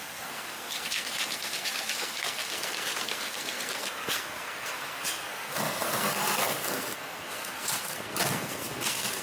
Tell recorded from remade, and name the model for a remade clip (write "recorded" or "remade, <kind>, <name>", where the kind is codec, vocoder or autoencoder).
remade, codec, SNAC